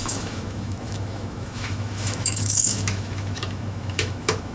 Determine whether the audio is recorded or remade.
remade